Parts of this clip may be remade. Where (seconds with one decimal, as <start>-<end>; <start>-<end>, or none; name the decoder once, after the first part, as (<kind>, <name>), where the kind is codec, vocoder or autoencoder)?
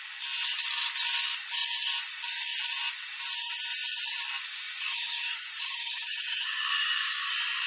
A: 4.5-7.3 (codec, DAC)